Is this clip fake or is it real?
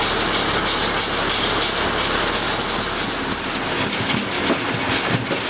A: real